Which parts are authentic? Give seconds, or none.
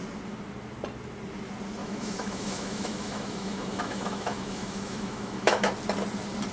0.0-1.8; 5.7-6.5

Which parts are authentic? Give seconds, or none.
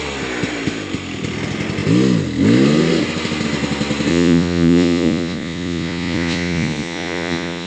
0.0-4.1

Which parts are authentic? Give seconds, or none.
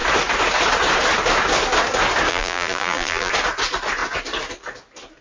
0.0-2.3; 3.3-5.2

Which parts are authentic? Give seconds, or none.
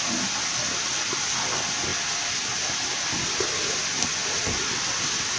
0.0-5.4